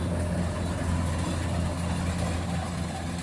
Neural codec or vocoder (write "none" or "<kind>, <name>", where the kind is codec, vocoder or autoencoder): none